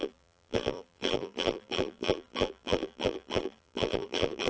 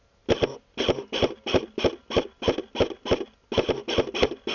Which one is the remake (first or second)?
first